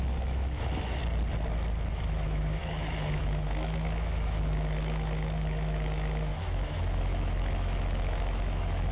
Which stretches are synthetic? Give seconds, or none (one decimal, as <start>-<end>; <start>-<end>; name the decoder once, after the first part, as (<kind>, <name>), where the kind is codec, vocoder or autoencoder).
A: 0.0-1.0 (autoencoder, DAC-VAE); 1.9-8.9